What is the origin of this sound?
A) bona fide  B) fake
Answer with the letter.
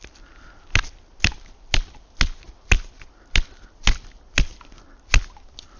A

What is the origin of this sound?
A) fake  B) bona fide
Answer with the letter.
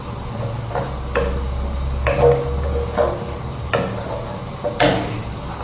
B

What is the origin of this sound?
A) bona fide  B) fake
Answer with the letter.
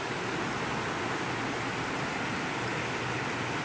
A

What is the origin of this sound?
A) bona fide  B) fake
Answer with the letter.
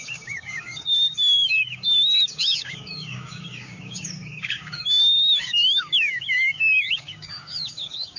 B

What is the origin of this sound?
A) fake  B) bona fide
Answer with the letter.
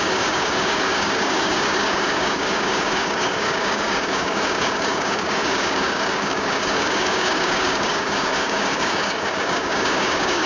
A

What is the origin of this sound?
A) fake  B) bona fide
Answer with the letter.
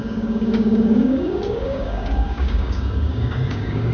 A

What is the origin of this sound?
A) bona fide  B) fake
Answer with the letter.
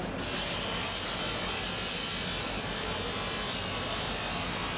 A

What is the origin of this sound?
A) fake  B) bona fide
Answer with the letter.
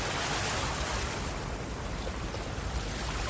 B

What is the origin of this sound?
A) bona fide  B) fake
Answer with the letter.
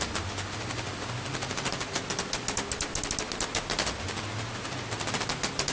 A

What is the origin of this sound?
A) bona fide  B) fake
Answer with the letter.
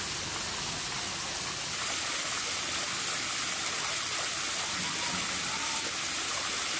A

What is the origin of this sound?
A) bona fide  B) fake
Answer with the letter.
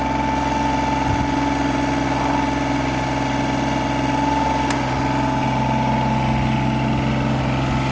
A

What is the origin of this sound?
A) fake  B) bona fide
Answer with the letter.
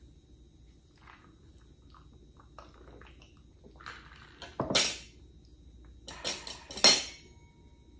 B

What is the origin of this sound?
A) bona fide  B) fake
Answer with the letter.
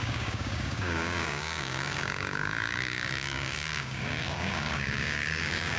B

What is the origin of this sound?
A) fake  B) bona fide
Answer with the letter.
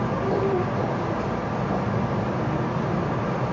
B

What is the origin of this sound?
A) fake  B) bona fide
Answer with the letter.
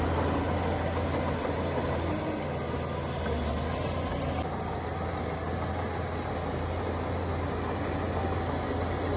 B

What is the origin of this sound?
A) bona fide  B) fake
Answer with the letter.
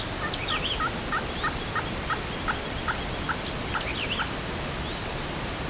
A